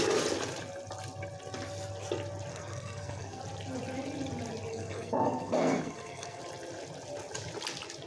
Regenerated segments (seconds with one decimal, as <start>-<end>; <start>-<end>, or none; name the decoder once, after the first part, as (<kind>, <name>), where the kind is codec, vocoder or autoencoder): 2.5-3.4 (codec, SNAC); 4.7-6.4